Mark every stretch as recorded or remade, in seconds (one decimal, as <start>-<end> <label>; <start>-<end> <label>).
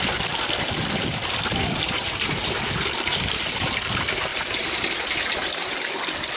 0.0-6.4 remade